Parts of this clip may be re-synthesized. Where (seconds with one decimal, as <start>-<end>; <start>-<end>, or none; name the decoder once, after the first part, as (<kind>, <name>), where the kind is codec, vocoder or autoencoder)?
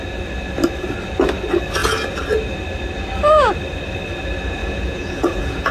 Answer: 4.6-5.7 (vocoder, Vocos)